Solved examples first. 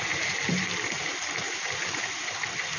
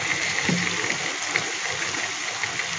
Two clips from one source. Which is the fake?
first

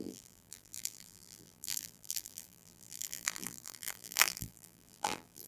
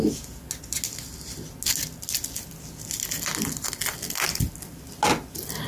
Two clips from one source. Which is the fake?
first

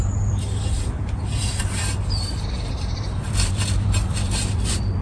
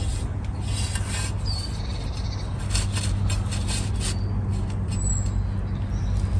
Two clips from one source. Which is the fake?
first